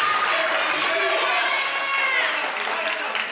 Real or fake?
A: real